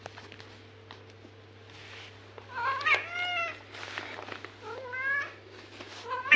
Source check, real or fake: real